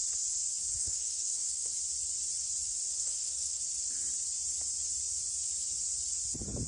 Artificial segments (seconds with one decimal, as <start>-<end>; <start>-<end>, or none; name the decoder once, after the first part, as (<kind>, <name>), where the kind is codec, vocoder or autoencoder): 0.8-1.7 (codec, SNAC); 3.0-3.6

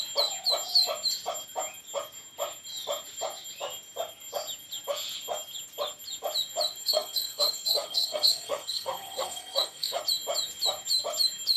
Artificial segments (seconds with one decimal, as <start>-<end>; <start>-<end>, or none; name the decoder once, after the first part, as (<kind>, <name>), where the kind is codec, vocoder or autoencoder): 6.8-10.0 (codec, SNAC)

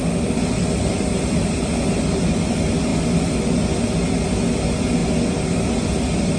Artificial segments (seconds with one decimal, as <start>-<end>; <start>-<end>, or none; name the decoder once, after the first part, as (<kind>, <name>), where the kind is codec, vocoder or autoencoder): none

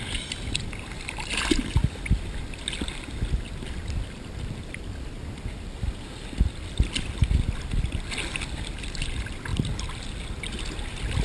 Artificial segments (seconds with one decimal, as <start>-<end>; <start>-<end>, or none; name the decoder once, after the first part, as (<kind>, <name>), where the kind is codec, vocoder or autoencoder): none

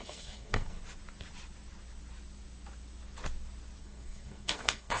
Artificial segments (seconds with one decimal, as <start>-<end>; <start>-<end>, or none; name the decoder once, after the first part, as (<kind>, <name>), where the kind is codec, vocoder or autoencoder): 0.0-0.8 (codec, SNAC); 3.8-5.0

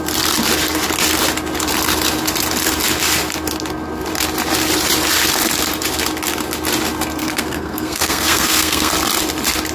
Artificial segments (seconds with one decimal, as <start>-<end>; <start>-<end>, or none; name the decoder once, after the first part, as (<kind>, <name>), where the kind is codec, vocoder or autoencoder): 7.2-8.9 (codec, SNAC)

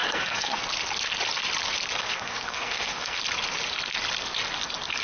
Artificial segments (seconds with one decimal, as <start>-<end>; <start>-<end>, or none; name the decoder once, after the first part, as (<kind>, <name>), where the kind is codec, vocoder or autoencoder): 0.0-0.6 (codec, SNAC); 2.0-3.2

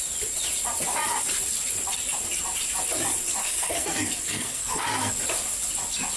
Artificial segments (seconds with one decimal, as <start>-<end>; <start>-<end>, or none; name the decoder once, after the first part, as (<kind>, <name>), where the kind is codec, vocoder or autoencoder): 3.4-5.1 (codec, SNAC)